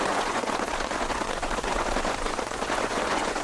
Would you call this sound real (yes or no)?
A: no